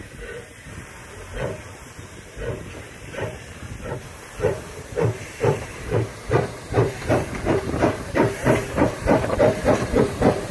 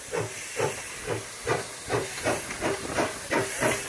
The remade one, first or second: first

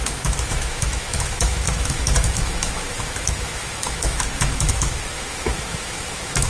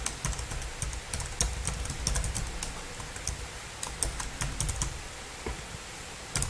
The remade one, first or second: first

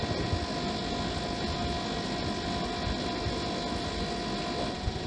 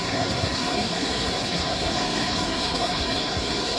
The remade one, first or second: second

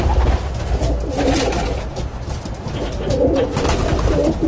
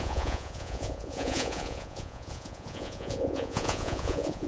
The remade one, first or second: second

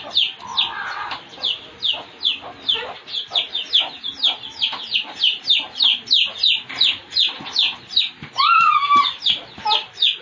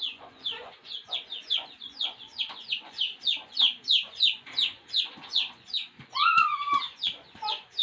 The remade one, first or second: second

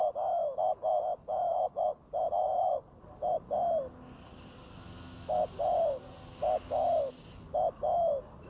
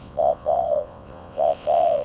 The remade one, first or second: second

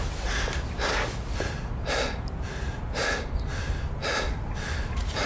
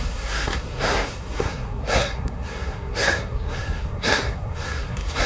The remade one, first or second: second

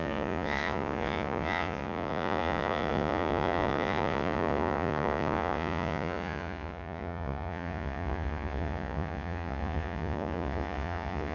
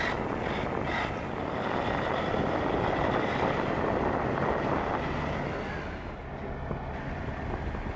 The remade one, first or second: first